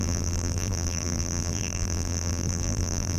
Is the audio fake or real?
fake